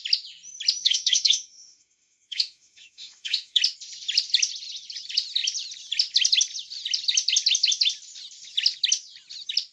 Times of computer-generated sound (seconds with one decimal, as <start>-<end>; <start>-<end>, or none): 0.8-3.6